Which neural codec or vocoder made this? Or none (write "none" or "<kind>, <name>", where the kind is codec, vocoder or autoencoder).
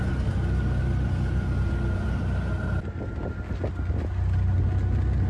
none